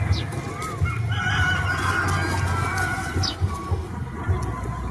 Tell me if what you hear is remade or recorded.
recorded